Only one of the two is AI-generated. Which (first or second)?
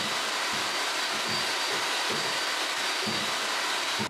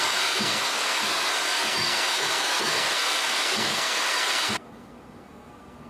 second